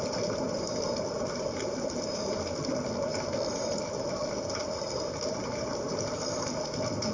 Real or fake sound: real